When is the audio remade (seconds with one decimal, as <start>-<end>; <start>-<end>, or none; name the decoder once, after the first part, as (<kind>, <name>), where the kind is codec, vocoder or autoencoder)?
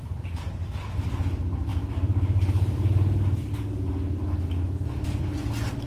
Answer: none